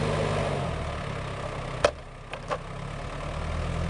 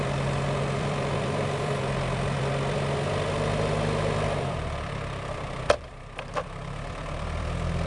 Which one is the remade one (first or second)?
second